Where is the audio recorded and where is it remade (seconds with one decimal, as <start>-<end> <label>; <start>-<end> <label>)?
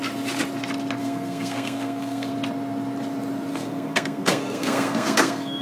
0.0-1.0 recorded; 1.0-2.3 remade; 2.3-3.5 recorded; 3.5-5.6 remade